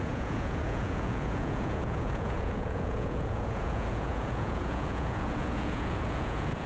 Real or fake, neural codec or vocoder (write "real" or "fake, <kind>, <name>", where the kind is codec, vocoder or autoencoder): fake, vocoder, Vocos